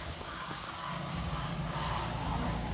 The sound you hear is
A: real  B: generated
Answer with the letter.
B